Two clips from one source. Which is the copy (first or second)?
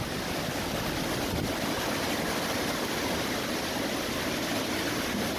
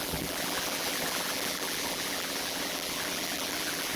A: second